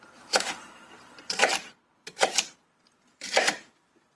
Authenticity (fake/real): fake